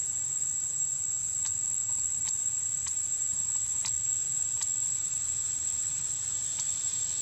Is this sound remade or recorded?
recorded